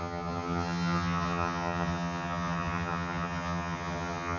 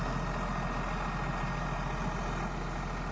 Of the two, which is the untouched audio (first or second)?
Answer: second